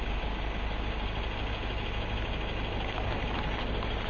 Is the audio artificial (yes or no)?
no